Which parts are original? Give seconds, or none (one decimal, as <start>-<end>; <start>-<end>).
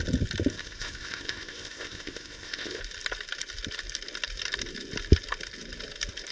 0.0-0.5; 2.8-6.3